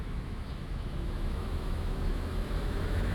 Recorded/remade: remade